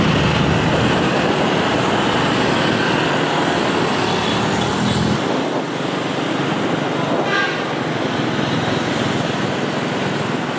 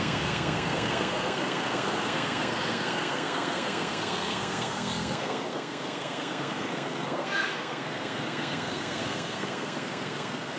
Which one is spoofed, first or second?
second